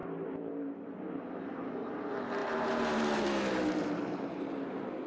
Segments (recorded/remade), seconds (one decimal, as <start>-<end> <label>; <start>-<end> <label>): 0.0-5.1 remade